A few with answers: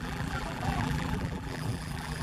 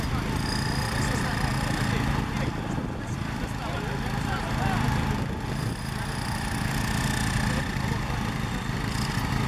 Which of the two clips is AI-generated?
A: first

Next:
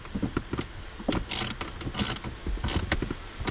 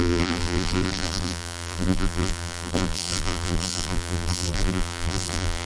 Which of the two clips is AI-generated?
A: second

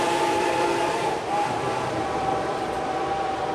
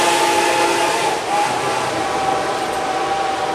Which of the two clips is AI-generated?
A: first